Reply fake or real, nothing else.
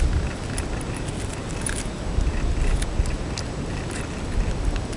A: real